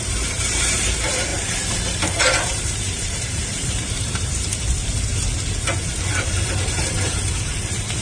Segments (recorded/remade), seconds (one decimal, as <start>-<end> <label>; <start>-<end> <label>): 0.0-1.3 remade; 1.3-2.2 recorded; 2.2-4.5 remade; 4.5-6.1 recorded; 6.1-8.0 remade